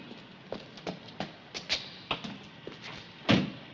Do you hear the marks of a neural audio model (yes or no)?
no